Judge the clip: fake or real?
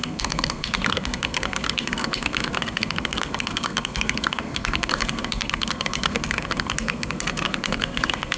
fake